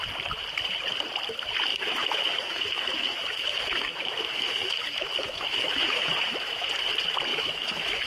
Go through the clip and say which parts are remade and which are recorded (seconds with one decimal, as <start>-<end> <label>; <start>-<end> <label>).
0.0-1.7 recorded; 1.7-6.6 remade; 6.6-7.3 recorded; 7.3-8.1 remade